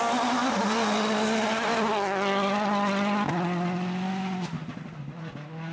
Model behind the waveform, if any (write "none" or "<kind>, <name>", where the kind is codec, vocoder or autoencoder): none